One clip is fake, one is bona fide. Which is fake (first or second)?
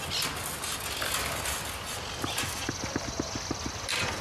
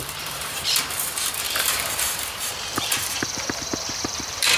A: second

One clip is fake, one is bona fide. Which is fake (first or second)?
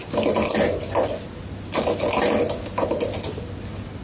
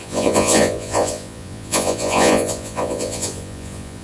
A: second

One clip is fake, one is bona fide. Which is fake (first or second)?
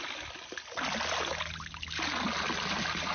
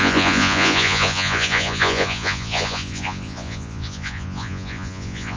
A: second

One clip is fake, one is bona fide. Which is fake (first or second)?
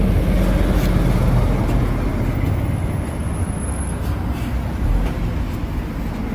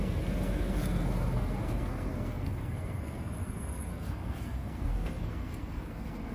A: second